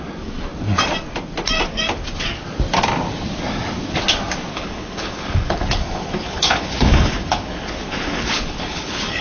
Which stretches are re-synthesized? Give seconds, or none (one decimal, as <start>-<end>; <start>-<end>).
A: 4.5-9.2